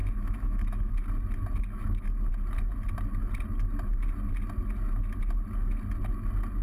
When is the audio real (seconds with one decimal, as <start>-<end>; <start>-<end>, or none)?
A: 0.9-6.6